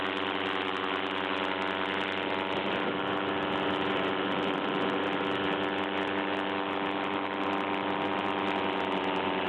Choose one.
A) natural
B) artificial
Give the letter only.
A